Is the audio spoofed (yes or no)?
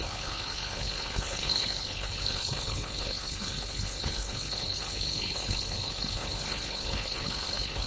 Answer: yes